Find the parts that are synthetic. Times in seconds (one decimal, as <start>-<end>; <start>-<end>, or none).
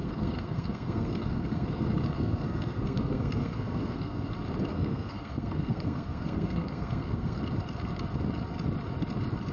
0.0-4.3; 4.7-7.4